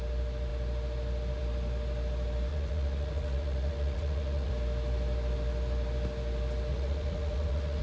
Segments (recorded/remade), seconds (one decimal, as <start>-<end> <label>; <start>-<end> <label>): 0.0-2.5 recorded; 2.5-4.5 remade; 4.5-6.7 recorded; 6.7-7.8 remade